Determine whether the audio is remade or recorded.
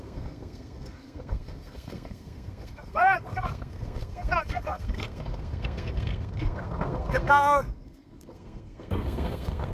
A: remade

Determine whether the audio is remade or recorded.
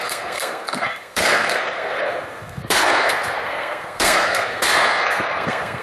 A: remade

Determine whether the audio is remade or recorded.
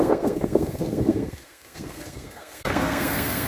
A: remade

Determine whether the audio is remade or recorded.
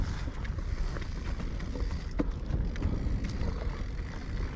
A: recorded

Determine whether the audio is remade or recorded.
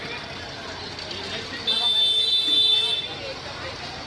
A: recorded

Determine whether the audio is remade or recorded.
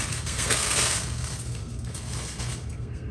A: remade